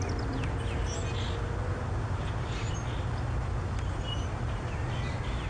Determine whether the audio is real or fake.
real